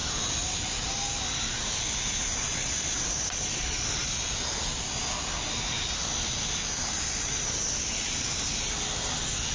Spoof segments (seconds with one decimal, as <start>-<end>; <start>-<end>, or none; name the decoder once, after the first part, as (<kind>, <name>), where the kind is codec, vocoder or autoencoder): none